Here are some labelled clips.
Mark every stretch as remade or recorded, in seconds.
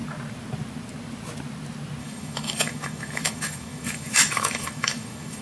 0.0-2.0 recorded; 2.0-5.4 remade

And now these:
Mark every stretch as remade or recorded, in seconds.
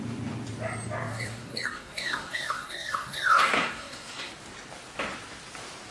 0.0-1.1 recorded; 1.1-4.3 remade; 4.3-5.9 recorded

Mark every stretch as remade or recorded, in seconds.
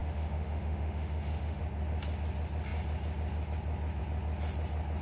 0.0-1.6 remade; 1.6-5.0 recorded